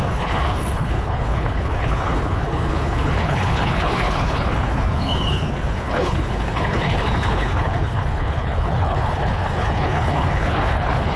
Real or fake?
fake